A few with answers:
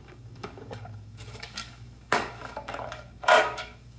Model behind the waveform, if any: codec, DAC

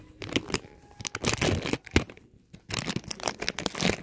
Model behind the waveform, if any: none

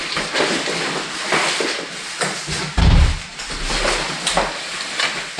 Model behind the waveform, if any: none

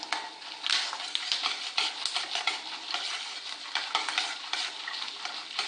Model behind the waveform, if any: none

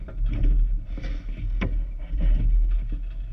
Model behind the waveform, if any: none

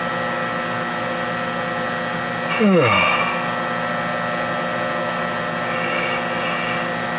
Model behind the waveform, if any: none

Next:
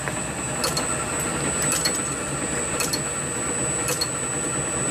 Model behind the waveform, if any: none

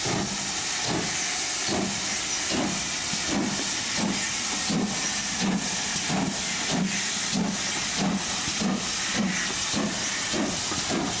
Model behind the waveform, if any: none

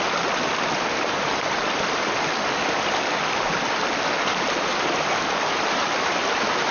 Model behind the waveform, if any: vocoder, BigVGAN v2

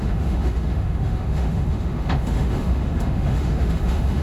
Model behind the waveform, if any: autoencoder, DAC-VAE